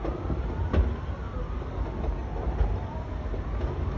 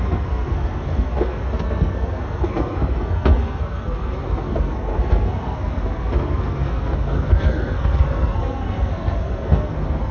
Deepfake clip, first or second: second